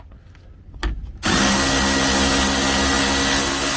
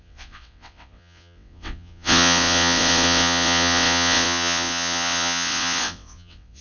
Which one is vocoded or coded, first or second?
second